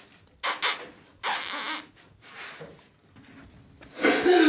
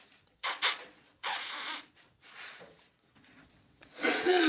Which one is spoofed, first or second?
second